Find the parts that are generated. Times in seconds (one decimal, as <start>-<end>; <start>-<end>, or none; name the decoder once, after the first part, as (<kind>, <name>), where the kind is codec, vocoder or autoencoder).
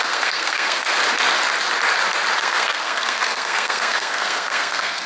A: 0.0-1.0 (codec, SNAC); 2.4-5.1